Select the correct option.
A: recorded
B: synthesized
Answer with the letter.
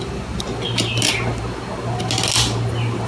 A